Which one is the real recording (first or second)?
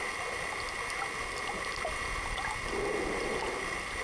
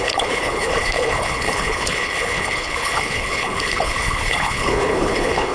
first